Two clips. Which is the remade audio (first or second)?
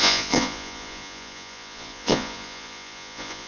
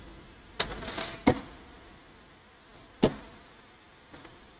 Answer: first